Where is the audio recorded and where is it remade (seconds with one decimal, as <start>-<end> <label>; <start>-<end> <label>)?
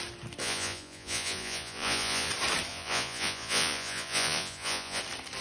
0.0-0.4 recorded; 0.4-2.3 remade; 2.3-2.7 recorded; 2.7-5.0 remade; 5.0-5.4 recorded